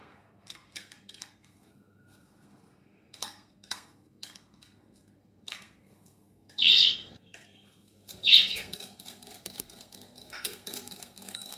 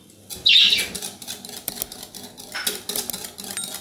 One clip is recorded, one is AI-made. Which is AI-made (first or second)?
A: first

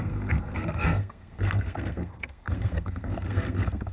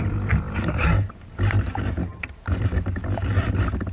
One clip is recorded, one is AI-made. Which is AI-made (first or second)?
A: first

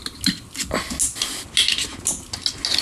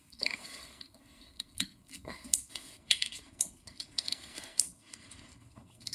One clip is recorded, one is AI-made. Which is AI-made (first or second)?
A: second